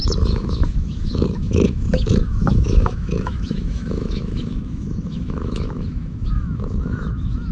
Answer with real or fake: fake